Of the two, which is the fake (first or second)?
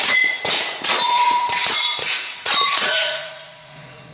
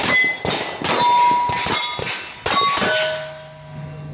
first